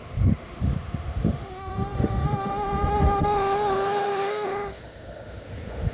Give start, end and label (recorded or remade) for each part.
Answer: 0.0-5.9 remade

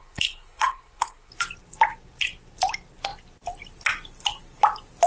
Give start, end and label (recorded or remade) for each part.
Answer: 0.0-1.3 remade; 1.3-5.1 recorded